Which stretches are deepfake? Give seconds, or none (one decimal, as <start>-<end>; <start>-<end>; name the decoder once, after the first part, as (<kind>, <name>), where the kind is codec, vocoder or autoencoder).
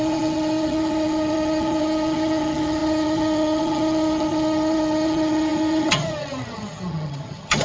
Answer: 0.0-7.6 (vocoder, HiFi-GAN)